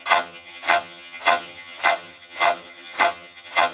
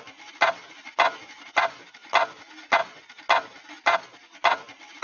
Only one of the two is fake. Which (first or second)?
first